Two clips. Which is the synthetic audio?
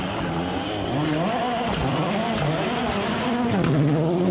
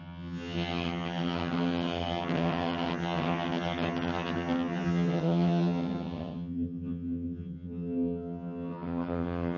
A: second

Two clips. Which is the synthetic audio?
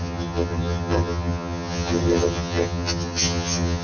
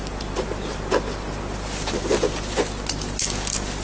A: first